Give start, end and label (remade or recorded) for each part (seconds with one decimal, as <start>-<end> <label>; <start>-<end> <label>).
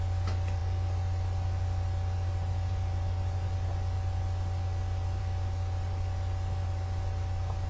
0.0-7.7 recorded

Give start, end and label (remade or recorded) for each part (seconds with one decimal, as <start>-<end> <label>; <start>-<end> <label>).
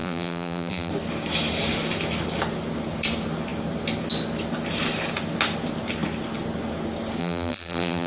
0.0-0.9 remade; 0.9-7.2 recorded; 7.2-8.1 remade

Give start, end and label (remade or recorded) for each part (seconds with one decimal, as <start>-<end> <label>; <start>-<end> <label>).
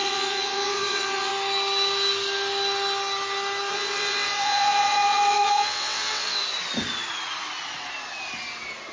0.0-1.3 remade; 1.3-3.7 recorded; 3.7-6.4 remade; 6.4-8.9 recorded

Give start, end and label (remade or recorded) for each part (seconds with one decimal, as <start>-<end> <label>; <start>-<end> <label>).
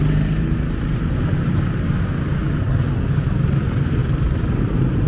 0.0-2.4 remade; 2.4-3.1 recorded; 3.1-5.1 remade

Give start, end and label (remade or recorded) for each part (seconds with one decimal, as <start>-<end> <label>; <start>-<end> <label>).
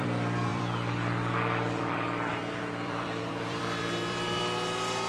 0.0-5.1 remade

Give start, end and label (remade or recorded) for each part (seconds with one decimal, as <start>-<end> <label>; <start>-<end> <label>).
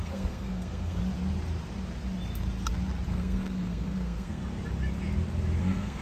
0.0-1.0 remade; 1.0-3.1 recorded; 3.1-4.4 remade; 4.4-5.6 recorded; 5.6-6.0 remade